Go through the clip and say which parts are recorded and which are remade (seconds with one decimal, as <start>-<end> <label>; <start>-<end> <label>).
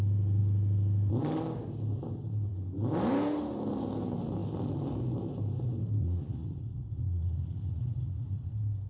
0.0-6.0 recorded; 6.0-8.5 remade; 8.5-8.9 recorded